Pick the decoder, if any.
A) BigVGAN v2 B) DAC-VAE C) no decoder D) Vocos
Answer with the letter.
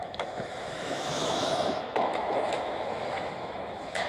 B